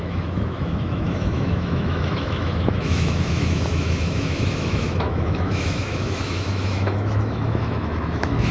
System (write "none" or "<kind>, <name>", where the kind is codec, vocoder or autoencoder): autoencoder, DAC-VAE